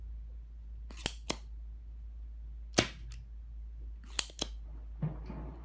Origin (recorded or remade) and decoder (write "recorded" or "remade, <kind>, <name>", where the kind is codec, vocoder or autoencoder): recorded